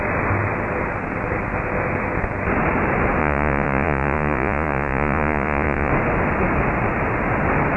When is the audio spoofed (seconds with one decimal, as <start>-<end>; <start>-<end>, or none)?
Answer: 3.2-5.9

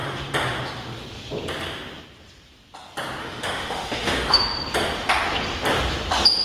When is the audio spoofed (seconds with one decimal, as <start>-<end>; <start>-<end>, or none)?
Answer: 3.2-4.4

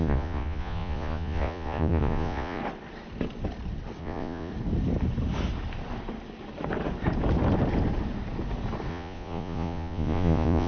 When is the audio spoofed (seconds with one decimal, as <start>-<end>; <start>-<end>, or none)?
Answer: 0.0-2.6; 4.0-4.5; 8.9-10.7

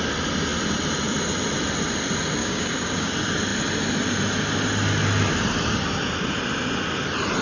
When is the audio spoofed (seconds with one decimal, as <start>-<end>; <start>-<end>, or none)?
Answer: 2.4-3.1